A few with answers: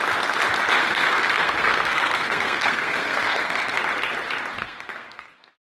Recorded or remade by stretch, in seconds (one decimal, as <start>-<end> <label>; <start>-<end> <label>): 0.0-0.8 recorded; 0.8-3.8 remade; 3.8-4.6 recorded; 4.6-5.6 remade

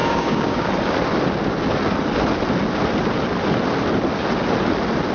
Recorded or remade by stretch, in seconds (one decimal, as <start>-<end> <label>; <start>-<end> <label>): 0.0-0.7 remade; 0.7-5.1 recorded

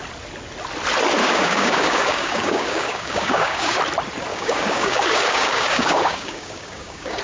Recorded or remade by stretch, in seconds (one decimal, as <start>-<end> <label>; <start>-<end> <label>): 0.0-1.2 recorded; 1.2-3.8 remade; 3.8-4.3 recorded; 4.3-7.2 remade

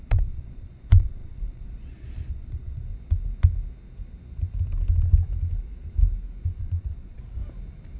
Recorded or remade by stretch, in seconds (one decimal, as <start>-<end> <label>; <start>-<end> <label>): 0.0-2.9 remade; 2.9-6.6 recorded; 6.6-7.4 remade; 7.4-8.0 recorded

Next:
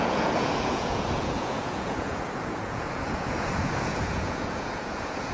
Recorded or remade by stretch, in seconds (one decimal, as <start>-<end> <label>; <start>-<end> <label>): 0.0-5.3 remade

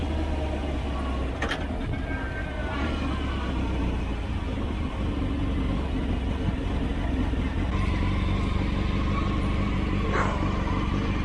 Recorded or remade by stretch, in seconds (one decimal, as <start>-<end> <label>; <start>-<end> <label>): 0.0-11.2 recorded

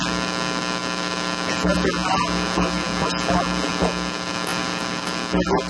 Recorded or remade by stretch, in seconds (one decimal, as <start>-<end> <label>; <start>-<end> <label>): 0.0-5.7 recorded

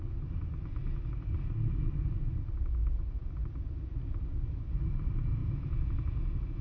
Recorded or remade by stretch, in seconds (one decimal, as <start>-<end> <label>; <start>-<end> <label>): 0.0-2.8 recorded; 2.8-3.3 remade; 3.3-5.4 recorded; 5.4-6.6 remade